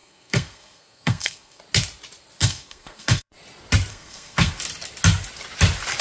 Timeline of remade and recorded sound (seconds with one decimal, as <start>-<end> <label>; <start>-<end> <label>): 0.0-1.6 remade; 1.6-2.4 recorded; 2.4-3.3 remade; 3.3-3.9 recorded; 3.9-4.5 remade; 4.5-6.0 recorded